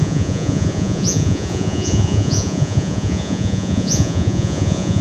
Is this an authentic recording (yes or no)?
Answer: no